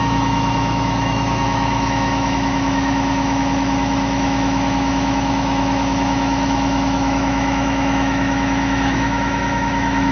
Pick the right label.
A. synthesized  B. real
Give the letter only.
A